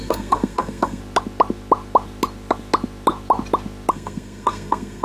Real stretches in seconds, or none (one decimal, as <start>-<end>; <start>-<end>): 1.0-3.9